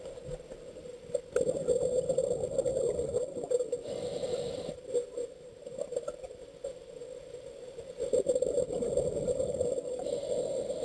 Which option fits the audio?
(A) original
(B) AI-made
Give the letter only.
A